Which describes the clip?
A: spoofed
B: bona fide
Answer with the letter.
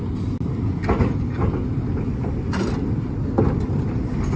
B